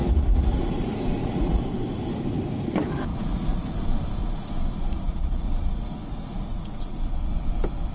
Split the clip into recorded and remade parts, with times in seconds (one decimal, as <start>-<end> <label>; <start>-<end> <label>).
0.0-1.6 remade; 1.6-3.1 recorded; 3.1-3.7 remade; 3.7-4.2 recorded; 4.2-7.3 remade; 7.3-7.9 recorded